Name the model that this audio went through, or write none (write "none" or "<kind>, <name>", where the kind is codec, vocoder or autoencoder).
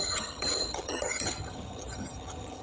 vocoder, HiFi-GAN